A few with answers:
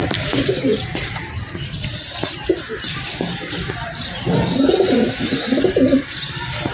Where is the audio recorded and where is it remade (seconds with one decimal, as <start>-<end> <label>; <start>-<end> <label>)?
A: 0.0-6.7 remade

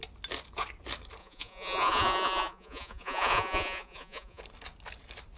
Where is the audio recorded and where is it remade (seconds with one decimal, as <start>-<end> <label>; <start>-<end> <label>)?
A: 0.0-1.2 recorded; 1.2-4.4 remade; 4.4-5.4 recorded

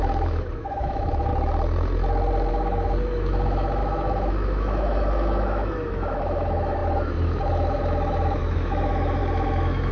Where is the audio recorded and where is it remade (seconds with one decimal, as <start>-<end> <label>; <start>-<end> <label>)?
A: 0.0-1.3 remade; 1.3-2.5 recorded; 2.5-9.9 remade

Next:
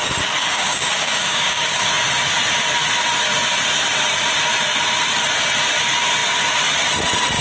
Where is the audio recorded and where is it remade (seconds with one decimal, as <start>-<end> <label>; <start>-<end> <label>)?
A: 0.0-0.4 recorded; 0.4-1.9 remade; 1.9-7.4 recorded

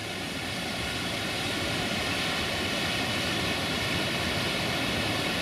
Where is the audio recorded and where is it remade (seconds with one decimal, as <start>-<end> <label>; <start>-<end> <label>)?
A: 0.0-5.4 recorded